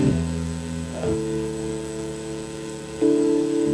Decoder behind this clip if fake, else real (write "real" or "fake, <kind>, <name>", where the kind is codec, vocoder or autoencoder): fake, codec, DAC